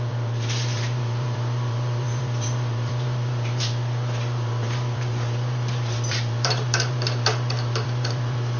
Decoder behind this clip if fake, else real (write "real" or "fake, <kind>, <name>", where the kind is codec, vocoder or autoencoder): fake, vocoder, BigVGAN v2